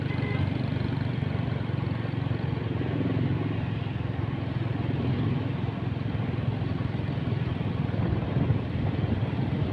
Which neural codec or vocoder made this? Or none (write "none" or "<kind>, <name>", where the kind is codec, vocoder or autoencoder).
none